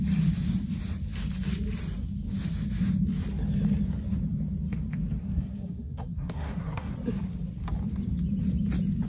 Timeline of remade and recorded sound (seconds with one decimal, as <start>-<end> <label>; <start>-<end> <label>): 0.0-5.2 recorded; 5.2-6.9 remade; 6.9-9.1 recorded